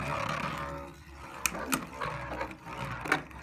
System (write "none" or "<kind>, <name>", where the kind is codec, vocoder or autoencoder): none